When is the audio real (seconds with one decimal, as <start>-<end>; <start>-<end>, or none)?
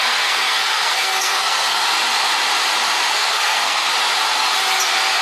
1.8-3.1; 3.9-5.2